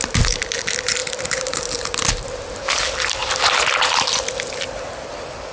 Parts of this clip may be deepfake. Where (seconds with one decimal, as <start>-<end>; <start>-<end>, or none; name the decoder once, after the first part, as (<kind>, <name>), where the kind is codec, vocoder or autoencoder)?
none